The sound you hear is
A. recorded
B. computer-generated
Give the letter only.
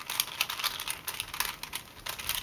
A